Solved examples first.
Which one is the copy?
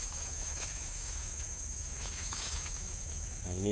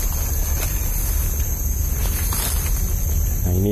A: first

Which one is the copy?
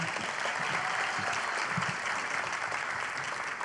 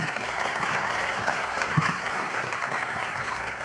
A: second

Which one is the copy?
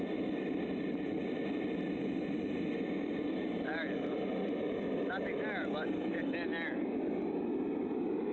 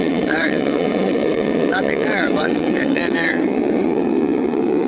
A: second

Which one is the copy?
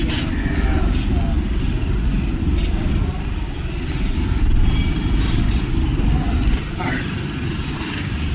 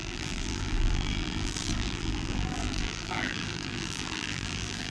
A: second